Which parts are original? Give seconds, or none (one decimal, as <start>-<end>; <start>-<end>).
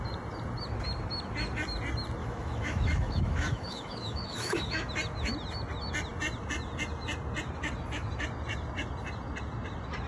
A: 0.0-2.2; 4.9-10.1